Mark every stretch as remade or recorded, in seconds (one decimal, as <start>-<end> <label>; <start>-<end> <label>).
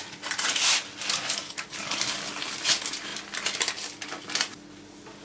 0.0-5.2 recorded